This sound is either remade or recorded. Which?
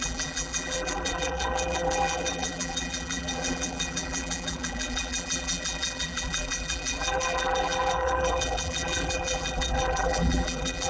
remade